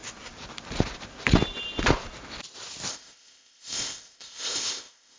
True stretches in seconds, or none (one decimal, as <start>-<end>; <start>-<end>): 0.0-2.9